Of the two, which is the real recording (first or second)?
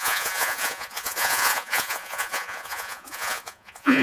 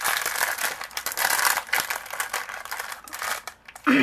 second